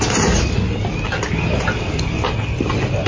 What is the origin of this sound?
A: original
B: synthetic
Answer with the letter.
A